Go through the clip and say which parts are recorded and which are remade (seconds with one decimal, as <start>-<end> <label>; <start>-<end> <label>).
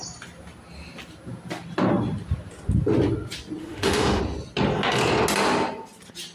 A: 0.0-3.6 recorded; 3.6-4.2 remade; 4.2-6.3 recorded